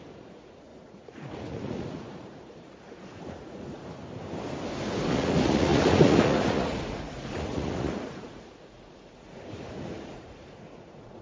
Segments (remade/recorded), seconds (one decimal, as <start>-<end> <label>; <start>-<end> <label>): 0.0-3.8 remade; 3.8-5.1 recorded; 5.1-11.2 remade